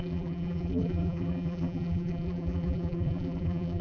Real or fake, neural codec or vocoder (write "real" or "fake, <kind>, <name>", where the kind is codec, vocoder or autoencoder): fake, vocoder, BigVGAN v2